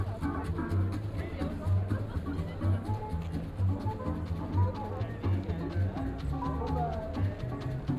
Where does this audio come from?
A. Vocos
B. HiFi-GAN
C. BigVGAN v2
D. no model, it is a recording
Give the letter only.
D